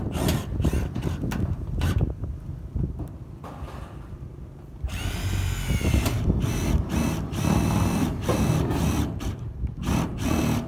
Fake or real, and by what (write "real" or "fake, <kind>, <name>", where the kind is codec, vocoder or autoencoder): real